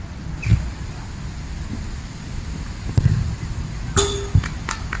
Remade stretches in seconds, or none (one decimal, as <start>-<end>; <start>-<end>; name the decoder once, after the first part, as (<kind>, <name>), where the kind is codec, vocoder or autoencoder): 0.5-3.5 (vocoder, BigVGAN v2)